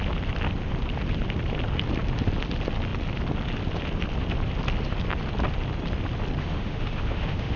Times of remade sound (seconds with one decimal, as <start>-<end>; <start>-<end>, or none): 6.4-7.6